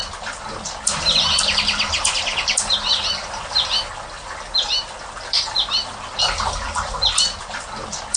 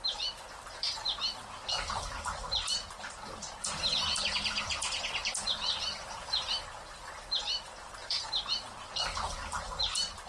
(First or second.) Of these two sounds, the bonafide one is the first